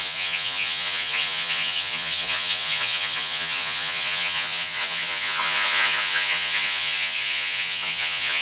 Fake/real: fake